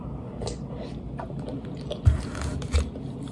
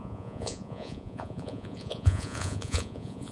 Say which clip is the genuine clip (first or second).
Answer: first